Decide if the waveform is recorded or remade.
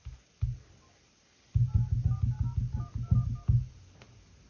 recorded